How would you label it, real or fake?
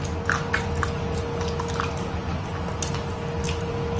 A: real